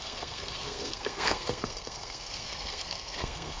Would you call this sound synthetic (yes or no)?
yes